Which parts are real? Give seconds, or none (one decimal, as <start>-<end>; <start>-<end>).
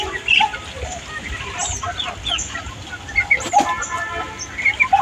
0.0-5.0